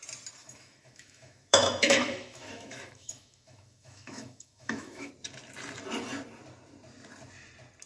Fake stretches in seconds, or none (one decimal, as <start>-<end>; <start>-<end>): 0.4-5.1